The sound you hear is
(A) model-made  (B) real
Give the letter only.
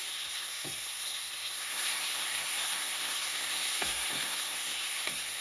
A